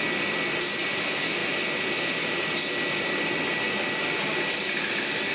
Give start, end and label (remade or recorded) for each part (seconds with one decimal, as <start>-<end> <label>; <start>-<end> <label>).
0.0-5.3 recorded

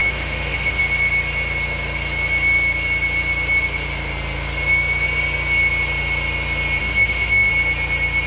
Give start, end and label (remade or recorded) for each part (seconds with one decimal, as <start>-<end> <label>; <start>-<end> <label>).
0.0-0.8 remade; 0.8-6.8 recorded; 6.8-7.5 remade; 7.5-8.3 recorded